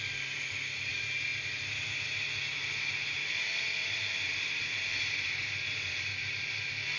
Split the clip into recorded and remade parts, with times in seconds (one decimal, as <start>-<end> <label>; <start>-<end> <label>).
0.0-7.0 remade